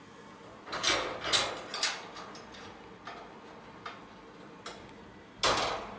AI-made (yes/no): no